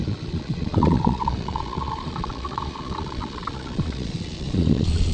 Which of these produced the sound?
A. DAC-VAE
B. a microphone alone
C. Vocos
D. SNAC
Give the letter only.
C